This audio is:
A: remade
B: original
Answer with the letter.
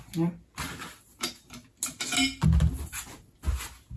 B